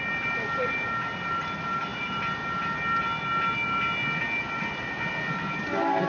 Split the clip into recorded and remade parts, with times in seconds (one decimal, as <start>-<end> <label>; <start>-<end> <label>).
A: 0.0-6.1 recorded